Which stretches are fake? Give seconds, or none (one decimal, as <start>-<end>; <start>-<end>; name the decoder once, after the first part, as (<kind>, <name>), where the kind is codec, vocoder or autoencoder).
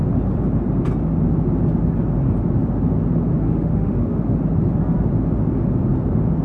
3.4-4.2 (autoencoder, DAC-VAE)